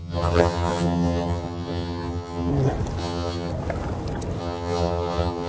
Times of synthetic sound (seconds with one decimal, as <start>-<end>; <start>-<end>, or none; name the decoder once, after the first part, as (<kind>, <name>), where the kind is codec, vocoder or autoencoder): 0.0-2.5 (vocoder, HiFi-GAN); 3.0-3.5; 4.4-5.5